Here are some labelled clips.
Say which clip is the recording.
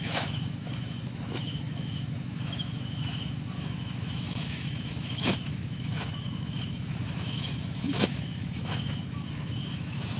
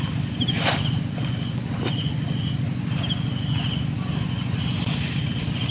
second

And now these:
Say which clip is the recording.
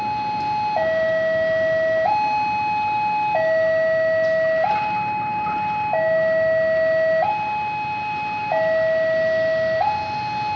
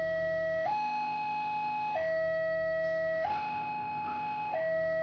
first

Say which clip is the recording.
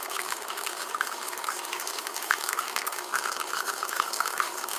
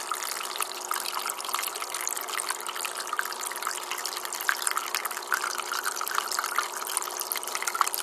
second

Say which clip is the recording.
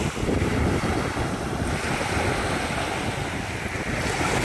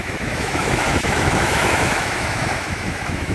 first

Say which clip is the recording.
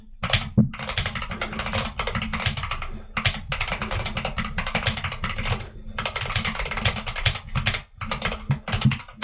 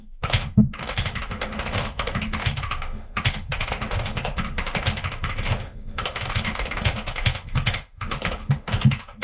first